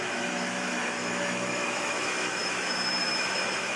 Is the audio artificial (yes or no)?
yes